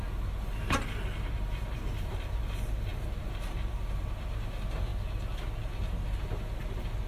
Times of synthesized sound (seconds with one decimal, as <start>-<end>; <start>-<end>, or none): 0.0-4.9; 5.6-7.1